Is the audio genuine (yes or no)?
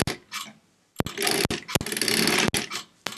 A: yes